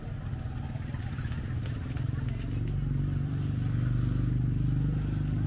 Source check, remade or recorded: recorded